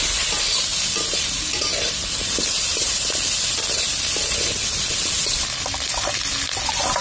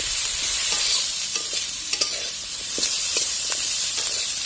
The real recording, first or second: first